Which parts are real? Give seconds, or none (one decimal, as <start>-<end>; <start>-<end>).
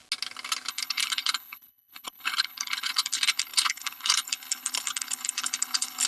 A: 0.0-0.7